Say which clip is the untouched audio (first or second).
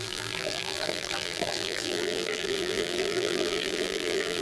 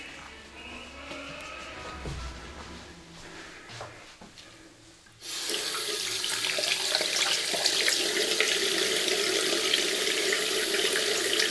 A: second